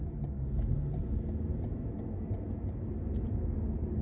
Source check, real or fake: real